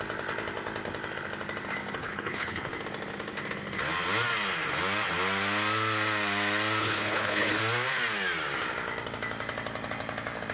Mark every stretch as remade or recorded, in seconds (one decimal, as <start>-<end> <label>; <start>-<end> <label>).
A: 0.0-2.0 recorded; 2.0-2.7 remade; 2.7-6.8 recorded; 6.8-7.6 remade; 7.6-10.5 recorded